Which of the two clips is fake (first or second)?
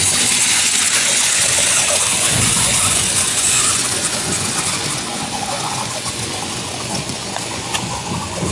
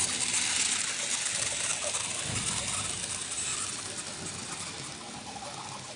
first